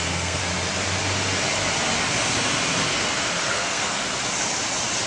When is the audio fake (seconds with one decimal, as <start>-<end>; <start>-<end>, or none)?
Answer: 0.0-0.4; 3.5-4.0